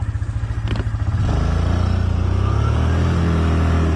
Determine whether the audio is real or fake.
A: real